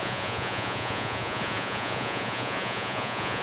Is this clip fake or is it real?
fake